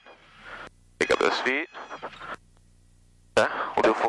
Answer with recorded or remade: recorded